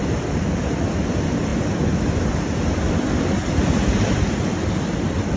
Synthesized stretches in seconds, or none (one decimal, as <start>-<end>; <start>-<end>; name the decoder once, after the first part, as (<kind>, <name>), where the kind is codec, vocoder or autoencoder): none